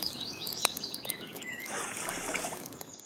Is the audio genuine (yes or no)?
no